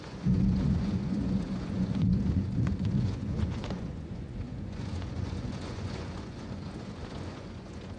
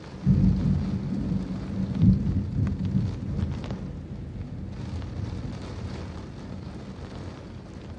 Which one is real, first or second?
second